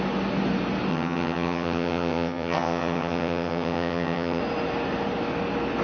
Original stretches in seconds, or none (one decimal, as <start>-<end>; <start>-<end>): 0.0-0.9; 4.4-5.8